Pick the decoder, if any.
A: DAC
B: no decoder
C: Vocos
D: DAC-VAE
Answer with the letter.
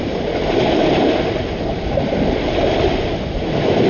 B